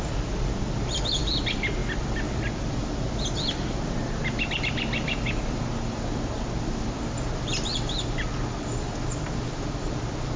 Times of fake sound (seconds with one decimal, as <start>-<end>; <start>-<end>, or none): 0.0-10.4